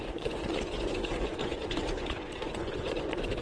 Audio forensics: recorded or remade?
remade